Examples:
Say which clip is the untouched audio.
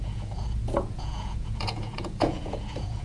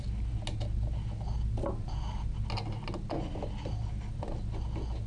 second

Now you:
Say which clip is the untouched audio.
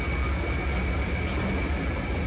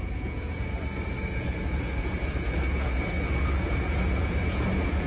first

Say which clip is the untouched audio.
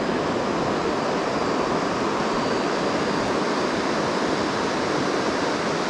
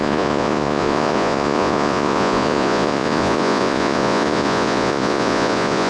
first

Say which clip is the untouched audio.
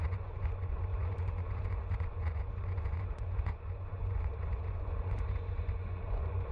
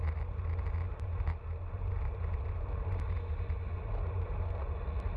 second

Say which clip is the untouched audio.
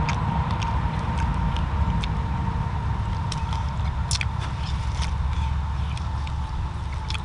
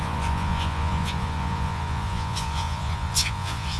first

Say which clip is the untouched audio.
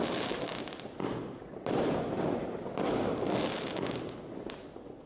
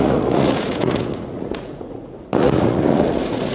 first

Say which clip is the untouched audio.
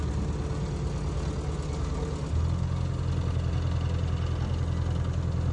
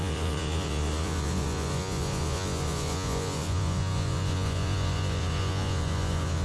first